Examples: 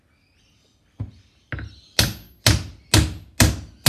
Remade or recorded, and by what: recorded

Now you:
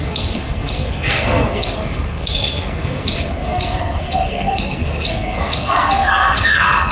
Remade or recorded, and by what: remade, codec, SNAC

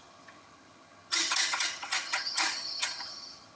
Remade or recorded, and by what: remade, vocoder, HiFi-GAN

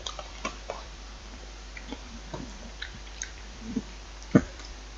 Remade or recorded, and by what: remade, vocoder, BigVGAN v2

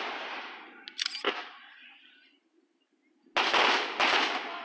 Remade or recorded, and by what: recorded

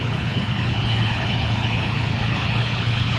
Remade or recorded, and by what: remade, codec, HILCodec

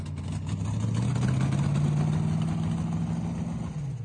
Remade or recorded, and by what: recorded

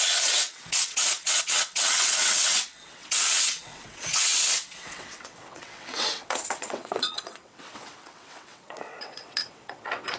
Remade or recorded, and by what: remade, vocoder, WaveNeXt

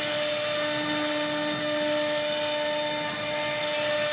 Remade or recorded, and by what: recorded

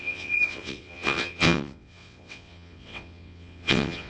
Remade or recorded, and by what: remade, vocoder, WaveNeXt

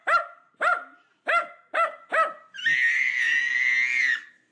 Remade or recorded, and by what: recorded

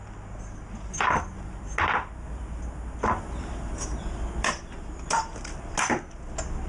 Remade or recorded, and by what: recorded